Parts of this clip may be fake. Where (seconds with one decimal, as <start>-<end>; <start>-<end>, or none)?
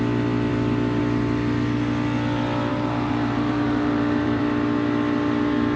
2.7-4.4